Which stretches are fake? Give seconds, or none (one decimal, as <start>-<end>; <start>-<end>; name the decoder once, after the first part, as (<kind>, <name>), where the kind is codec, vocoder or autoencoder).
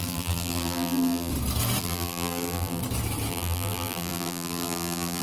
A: 0.0-1.3 (vocoder, BigVGAN v2); 1.8-2.8; 3.3-5.2